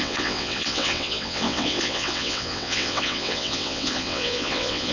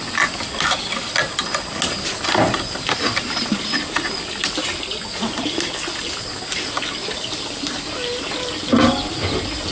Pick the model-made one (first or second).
first